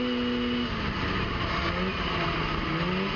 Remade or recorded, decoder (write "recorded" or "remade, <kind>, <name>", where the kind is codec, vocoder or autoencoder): recorded